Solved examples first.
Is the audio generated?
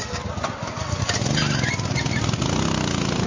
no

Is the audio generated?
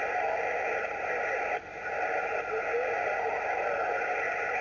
no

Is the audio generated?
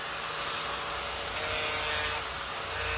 no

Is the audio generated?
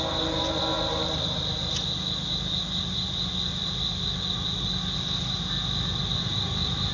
no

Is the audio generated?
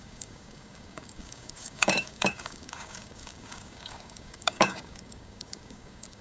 yes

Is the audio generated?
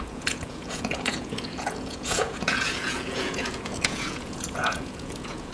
yes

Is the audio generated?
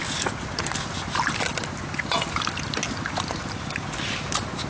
no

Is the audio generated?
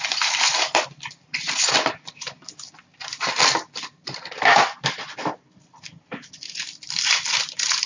yes